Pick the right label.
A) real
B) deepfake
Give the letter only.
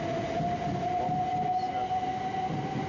A